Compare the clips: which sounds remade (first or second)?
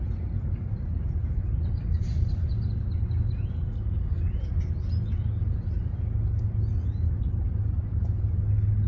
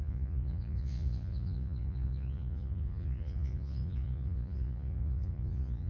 second